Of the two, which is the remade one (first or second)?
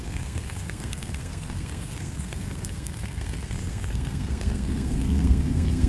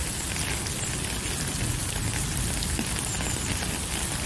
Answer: first